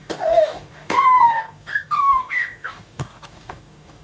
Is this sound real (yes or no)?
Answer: no